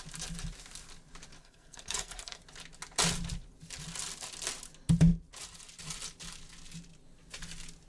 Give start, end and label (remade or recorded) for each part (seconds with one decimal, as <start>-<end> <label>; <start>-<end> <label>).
0.0-1.4 recorded; 1.4-2.4 remade; 2.4-7.9 recorded